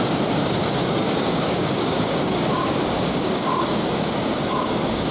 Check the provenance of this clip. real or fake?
fake